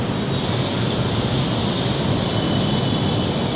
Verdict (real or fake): real